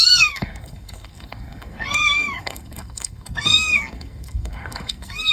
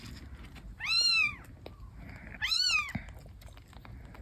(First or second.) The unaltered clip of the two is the second